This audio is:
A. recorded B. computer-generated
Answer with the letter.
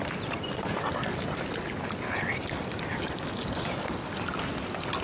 A